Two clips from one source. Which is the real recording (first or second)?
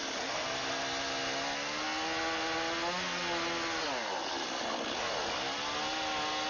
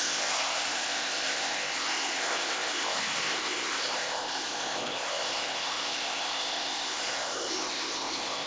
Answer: first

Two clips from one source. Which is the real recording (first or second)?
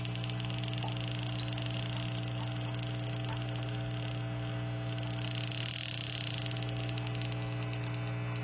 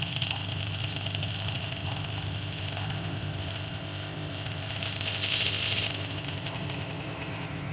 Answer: first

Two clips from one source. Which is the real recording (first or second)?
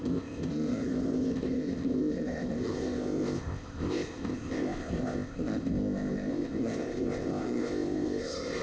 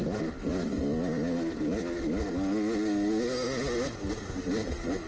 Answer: second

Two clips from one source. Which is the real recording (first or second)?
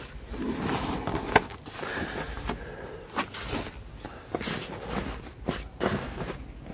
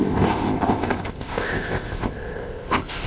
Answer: first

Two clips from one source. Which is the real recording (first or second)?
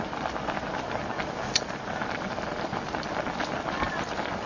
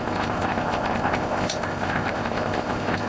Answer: first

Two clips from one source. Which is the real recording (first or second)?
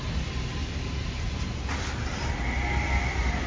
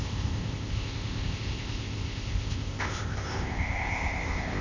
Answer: first